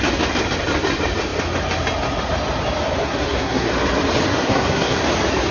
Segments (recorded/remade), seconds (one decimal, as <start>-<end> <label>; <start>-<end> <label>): 0.0-3.0 recorded; 3.0-3.7 remade; 3.7-4.3 recorded; 4.3-5.0 remade; 5.0-5.5 recorded